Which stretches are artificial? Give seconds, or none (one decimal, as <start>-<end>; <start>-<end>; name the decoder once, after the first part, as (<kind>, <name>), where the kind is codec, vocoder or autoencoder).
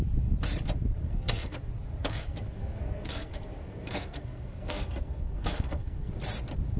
1.0-1.6 (codec, SNAC); 2.0-6.1